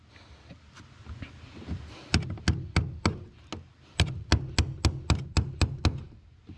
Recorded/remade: recorded